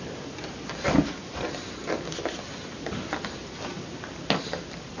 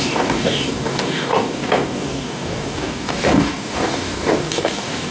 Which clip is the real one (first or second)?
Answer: first